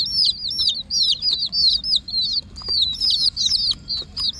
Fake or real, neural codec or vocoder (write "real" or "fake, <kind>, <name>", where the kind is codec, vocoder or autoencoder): real